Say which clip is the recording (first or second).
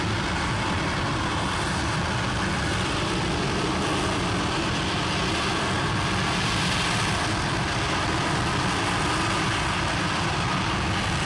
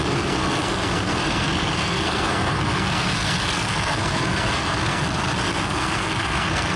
first